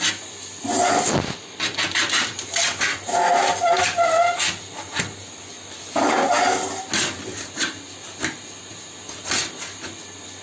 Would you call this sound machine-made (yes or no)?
no